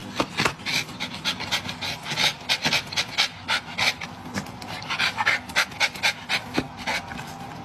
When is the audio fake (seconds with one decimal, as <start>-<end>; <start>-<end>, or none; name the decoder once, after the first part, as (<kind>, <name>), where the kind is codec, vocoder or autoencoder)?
none